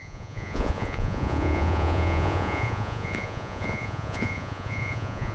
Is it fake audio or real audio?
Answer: fake